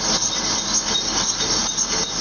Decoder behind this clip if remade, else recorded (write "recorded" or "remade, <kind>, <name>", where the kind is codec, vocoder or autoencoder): recorded